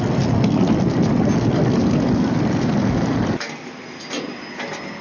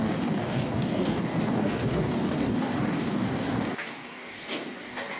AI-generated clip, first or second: second